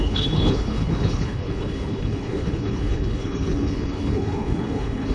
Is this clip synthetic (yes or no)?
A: yes